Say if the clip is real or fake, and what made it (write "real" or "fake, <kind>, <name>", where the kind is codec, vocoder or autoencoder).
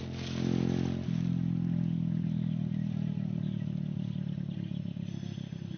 real